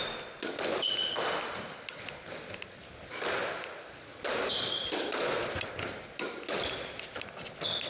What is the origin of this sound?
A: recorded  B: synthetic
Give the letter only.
A